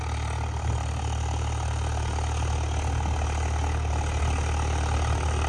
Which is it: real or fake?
real